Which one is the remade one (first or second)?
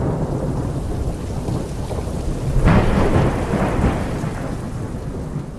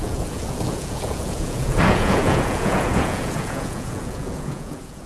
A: second